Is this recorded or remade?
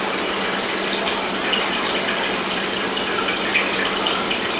recorded